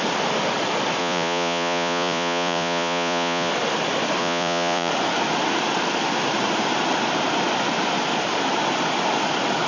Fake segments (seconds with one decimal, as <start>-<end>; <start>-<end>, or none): 1.0-3.5; 4.2-4.9